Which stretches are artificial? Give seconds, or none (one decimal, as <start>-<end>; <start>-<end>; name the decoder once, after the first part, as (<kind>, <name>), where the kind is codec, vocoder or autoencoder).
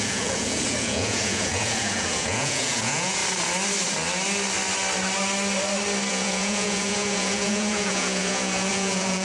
0.0-3.2 (vocoder, Vocos); 6.1-9.2